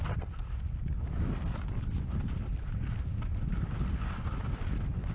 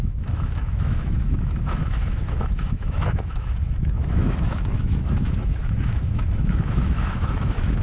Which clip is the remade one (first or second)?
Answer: second